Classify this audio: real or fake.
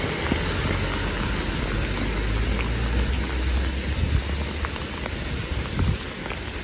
real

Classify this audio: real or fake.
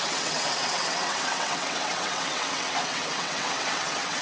fake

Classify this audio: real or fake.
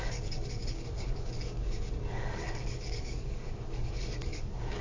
fake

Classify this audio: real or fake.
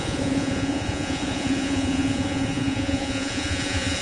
fake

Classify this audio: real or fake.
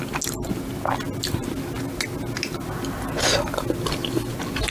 real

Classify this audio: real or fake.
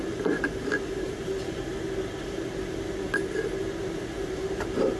real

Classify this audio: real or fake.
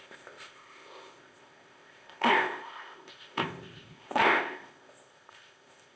fake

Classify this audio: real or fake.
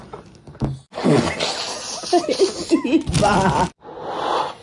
real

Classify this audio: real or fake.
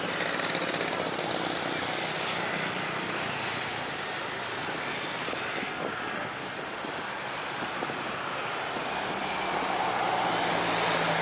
real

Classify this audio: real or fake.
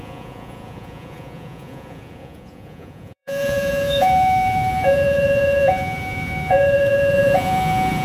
fake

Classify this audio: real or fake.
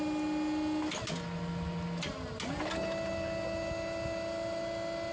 real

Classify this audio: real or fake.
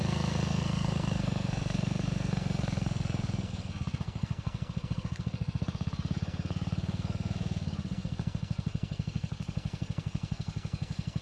fake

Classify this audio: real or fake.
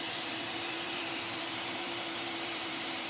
fake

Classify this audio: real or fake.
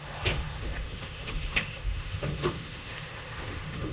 fake